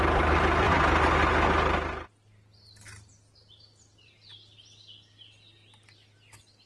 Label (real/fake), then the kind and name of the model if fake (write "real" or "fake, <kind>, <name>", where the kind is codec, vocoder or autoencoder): real